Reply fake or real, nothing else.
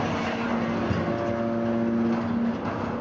real